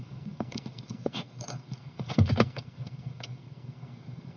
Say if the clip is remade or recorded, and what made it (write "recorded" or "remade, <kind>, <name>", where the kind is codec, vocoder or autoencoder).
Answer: remade, codec, SNAC